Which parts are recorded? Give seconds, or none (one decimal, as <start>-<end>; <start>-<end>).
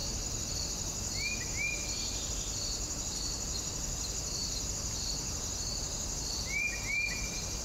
0.6-4.4; 5.1-7.6